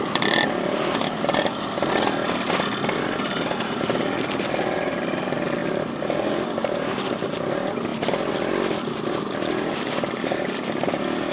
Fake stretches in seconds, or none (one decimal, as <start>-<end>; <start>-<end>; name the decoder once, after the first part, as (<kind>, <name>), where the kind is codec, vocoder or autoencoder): none